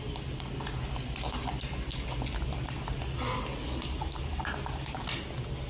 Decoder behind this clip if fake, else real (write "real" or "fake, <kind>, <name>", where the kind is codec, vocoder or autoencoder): real